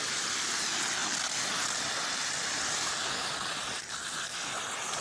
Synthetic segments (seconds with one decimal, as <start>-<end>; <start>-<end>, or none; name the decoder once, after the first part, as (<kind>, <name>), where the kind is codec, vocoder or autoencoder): 1.0-1.5 (vocoder, BigVGAN v2); 3.0-3.5